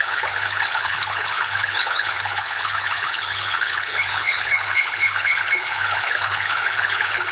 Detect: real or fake fake